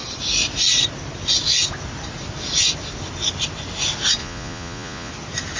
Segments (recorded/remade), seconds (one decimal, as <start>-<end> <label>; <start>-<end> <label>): 0.0-4.2 recorded; 4.2-5.1 remade; 5.1-5.6 recorded

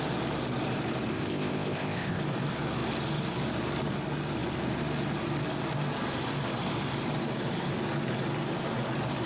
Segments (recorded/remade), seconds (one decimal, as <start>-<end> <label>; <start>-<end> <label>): 0.0-1.1 recorded; 1.1-2.2 remade; 2.2-9.3 recorded

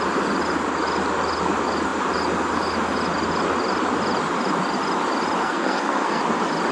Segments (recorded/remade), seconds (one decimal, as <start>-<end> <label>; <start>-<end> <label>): 0.0-5.4 recorded; 5.4-6.2 remade; 6.2-6.7 recorded

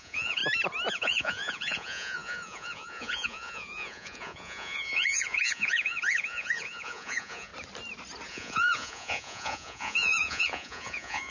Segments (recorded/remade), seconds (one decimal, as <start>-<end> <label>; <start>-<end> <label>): 0.0-0.4 remade; 0.4-0.9 recorded; 0.9-7.5 remade; 7.5-8.3 recorded; 8.3-11.3 remade

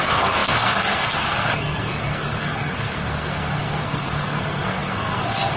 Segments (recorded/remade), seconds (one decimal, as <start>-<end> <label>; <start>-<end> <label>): 0.0-5.6 remade

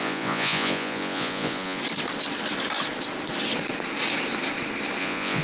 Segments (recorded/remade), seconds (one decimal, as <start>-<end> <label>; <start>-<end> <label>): 0.0-1.8 remade; 1.8-5.0 recorded; 5.0-5.4 remade

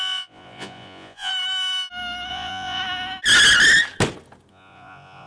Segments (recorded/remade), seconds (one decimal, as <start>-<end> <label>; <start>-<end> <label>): 0.0-1.3 remade; 1.3-2.3 recorded; 2.3-2.8 remade; 2.8-4.5 recorded; 4.5-5.3 remade

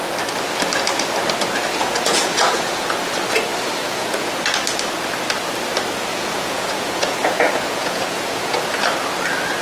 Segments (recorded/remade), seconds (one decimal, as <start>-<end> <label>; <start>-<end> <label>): 0.0-1.8 recorded; 1.8-3.0 remade; 3.0-3.8 recorded; 3.8-4.4 remade; 4.4-6.1 recorded; 6.1-8.6 remade; 8.6-9.6 recorded